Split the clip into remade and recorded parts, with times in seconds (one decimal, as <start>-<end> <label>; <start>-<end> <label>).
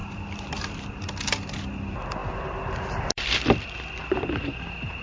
0.0-5.0 recorded